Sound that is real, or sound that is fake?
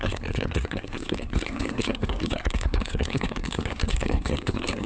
fake